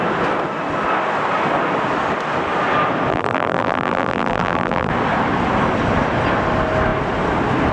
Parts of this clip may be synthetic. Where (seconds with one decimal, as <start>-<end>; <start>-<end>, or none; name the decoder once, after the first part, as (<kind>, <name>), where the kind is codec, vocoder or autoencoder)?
3.1-4.9 (vocoder, BigVGAN v2)